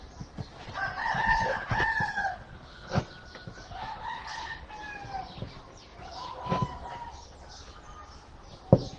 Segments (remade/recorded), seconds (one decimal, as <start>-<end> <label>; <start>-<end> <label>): 0.0-1.0 recorded; 1.0-3.0 remade; 3.0-3.9 recorded; 3.9-4.7 remade; 4.7-9.0 recorded